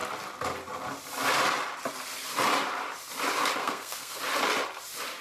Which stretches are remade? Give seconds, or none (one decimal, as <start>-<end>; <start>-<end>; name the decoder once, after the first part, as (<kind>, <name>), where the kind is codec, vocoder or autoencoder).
3.6-4.2 (codec, SNAC)